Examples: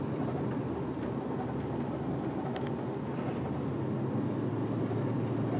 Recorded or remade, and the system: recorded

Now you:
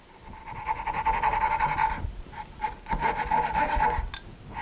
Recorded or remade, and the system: recorded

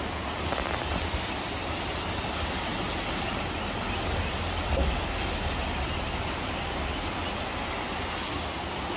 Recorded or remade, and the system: recorded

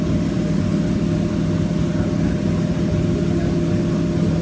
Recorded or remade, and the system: recorded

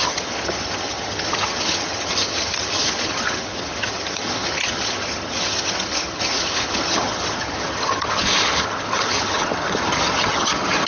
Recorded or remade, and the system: remade, vocoder, HiFi-GAN